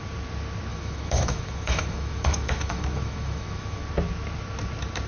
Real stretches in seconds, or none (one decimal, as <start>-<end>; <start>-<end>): 0.0-0.7; 3.8-5.1

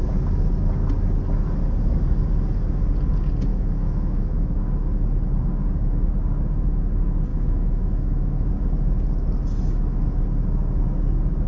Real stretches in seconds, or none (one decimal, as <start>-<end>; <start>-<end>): 0.0-3.5; 4.6-7.3; 8.5-11.5

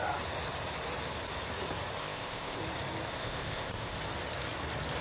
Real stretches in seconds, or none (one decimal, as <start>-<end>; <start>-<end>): 0.0-2.0; 2.6-3.1; 4.0-5.0

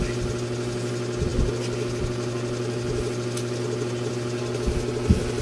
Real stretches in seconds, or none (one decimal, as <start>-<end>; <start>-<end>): 0.0-5.4

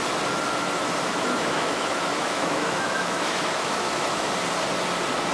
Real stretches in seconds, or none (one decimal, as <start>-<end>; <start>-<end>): 0.0-1.1; 4.3-5.3